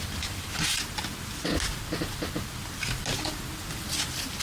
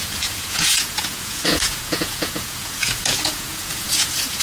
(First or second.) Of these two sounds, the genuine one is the first